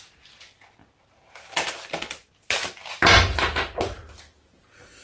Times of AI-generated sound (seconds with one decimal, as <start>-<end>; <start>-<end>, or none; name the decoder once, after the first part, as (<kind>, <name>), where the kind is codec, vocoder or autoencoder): none